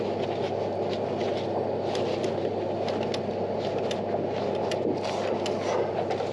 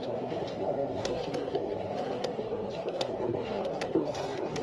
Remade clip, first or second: second